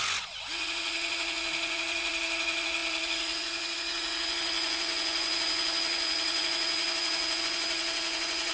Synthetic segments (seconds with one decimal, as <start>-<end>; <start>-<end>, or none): 0.0-8.5

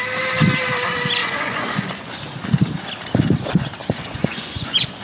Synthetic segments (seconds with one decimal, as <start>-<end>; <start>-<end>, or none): 1.2-2.1; 3.8-5.0

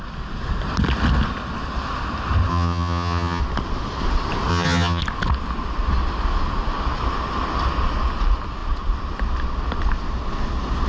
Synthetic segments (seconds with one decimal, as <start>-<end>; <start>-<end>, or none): 2.5-3.4; 4.5-5.0

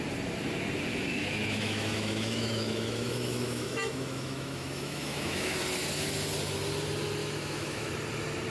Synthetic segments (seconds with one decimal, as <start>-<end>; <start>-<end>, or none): 0.9-5.6; 7.2-7.9

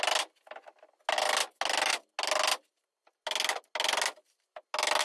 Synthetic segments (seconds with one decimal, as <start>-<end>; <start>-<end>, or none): none

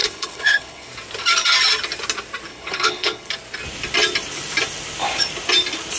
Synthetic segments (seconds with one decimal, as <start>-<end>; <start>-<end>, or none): 0.0-0.9; 2.5-3.3

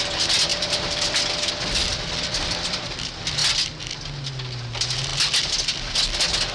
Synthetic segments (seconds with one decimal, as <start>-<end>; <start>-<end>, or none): 0.5-1.5; 1.9-2.8